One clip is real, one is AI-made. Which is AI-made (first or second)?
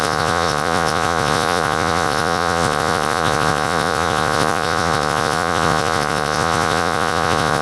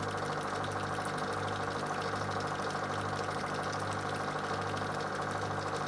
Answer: first